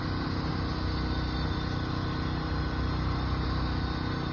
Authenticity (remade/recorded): recorded